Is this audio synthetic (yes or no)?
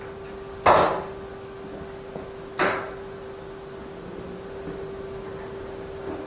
no